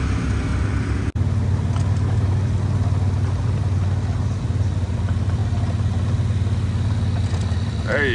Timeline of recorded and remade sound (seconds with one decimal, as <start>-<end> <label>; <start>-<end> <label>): 0.0-0.5 remade; 0.5-4.4 recorded; 4.4-5.4 remade; 5.4-7.3 recorded; 7.3-8.1 remade